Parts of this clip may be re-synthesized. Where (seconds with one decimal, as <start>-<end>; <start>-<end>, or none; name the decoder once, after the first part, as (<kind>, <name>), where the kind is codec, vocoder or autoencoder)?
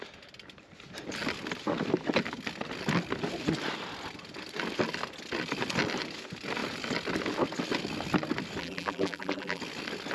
8.6-9.6 (vocoder, BigVGAN v2)